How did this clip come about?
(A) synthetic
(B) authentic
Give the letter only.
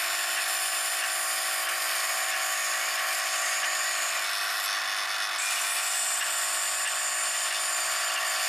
B